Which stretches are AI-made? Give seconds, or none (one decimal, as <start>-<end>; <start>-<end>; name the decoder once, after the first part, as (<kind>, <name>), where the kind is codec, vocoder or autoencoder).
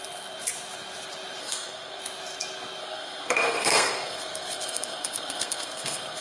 1.4-2.0 (codec, SNAC); 2.8-6.2